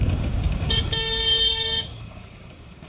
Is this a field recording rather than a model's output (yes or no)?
no